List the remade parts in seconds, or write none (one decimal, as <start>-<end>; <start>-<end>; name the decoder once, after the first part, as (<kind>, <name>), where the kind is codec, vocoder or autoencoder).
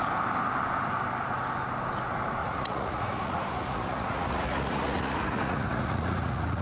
2.4-6.6 (vocoder, Vocos)